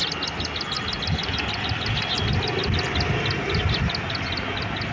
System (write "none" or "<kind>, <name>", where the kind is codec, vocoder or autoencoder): none